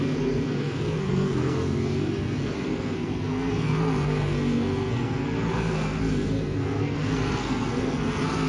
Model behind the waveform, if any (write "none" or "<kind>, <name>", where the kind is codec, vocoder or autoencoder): codec, SNAC